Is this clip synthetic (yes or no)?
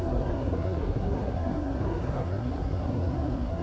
yes